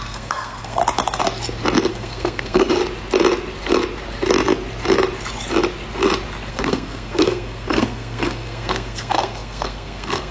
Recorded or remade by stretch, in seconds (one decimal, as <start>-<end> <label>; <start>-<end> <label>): 0.0-0.8 remade; 0.8-1.9 recorded; 1.9-2.8 remade; 2.8-6.5 recorded; 6.5-10.3 remade